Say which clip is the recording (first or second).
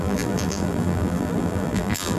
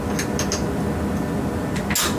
second